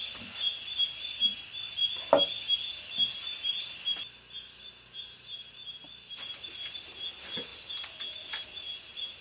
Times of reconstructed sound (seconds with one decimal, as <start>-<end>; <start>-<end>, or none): 7.5-8.0